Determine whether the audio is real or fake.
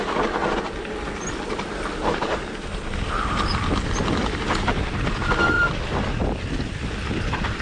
real